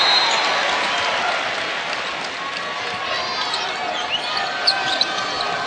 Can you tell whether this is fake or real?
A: real